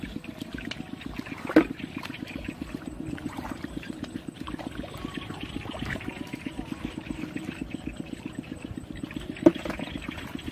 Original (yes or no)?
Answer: no